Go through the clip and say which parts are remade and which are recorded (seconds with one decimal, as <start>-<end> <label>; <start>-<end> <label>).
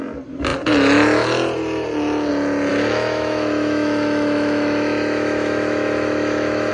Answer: 0.0-2.7 recorded; 2.7-6.7 remade